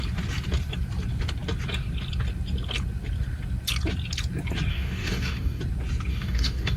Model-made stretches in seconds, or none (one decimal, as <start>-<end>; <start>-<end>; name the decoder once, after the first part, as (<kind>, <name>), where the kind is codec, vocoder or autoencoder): 4.7-5.6 (codec, DAC); 6.1-6.8